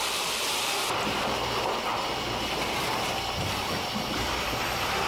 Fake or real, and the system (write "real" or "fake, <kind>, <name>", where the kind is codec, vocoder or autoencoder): real